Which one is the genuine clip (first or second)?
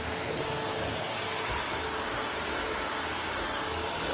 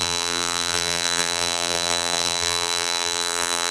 first